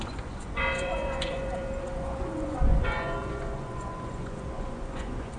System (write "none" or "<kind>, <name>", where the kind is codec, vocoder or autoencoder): vocoder, Vocos